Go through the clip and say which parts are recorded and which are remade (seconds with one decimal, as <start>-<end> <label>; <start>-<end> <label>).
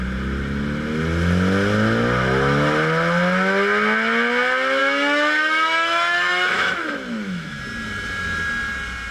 0.0-4.8 recorded; 4.8-7.6 remade; 7.6-9.1 recorded